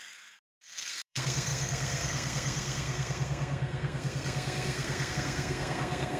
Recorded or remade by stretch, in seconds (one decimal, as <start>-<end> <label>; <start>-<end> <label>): 0.0-6.2 remade